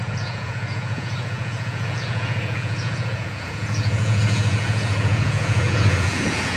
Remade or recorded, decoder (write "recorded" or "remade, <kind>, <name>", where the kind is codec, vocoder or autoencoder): remade, vocoder, Vocos